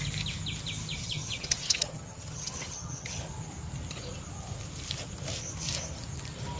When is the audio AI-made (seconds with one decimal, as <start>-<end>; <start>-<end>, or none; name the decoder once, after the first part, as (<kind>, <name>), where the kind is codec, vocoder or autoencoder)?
1.0-3.2 (vocoder, HiFi-GAN)